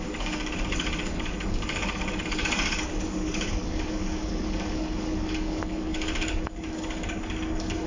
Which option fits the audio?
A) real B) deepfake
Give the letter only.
B